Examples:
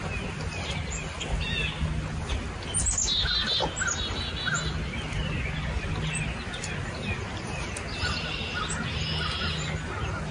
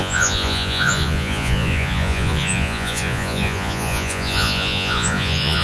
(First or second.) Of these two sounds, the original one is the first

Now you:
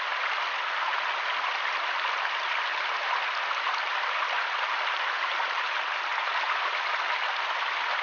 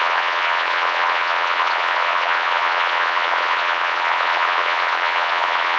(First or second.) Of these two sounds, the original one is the first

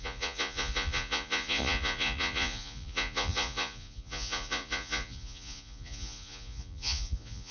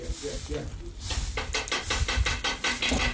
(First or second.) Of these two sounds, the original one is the second